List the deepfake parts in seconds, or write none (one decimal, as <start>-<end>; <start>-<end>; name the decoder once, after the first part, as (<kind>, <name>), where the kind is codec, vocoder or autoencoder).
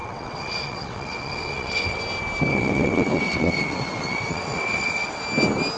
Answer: 0.0-2.0 (vocoder, WaveNeXt); 2.5-5.2